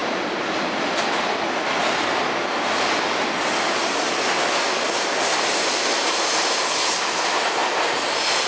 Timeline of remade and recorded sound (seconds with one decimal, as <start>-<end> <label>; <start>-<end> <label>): 0.0-8.5 recorded